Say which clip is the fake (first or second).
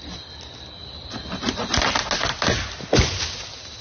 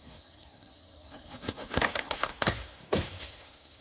second